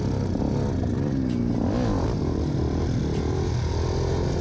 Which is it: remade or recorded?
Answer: recorded